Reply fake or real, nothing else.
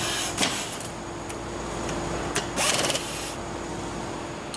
real